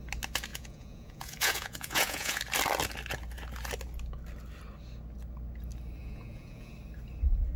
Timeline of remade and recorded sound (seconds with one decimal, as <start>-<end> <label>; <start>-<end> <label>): 0.0-0.5 recorded; 0.5-2.4 remade; 2.4-6.0 recorded; 6.0-6.7 remade; 6.7-7.6 recorded